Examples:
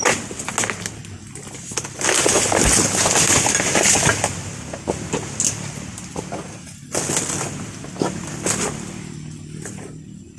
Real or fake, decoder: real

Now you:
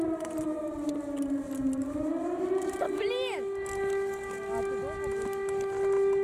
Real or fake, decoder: real